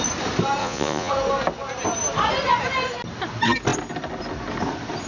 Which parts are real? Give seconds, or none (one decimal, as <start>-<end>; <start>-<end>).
0.0-0.6; 1.1-5.1